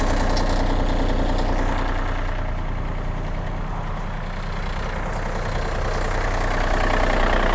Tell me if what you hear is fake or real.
real